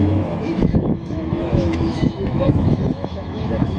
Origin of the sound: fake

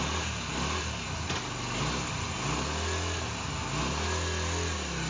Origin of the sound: real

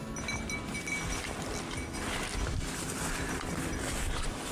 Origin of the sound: real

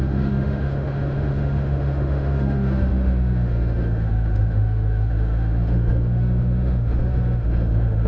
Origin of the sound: fake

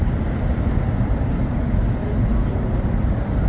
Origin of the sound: real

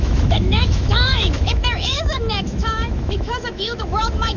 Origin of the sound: fake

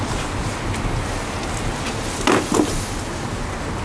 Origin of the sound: real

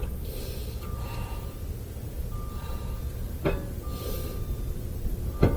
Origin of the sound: real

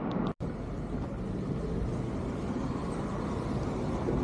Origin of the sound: real